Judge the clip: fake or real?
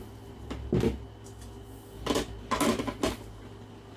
real